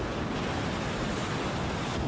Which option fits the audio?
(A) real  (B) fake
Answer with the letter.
A